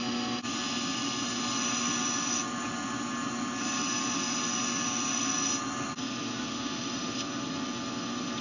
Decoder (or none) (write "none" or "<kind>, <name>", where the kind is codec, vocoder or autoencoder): none